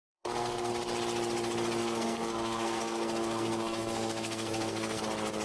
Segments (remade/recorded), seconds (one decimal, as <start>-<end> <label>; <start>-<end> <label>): 0.0-0.7 remade; 0.7-1.8 recorded; 1.8-5.0 remade; 5.0-5.4 recorded